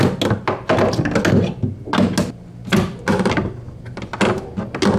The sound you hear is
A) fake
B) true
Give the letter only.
B